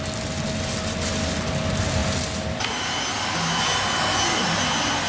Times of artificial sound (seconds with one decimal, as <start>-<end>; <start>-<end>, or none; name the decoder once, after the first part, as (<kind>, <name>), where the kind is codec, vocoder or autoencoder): 2.0-3.0 (vocoder, BigVGAN v2)